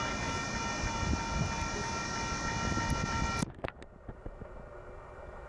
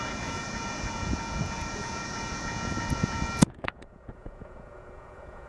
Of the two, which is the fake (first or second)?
second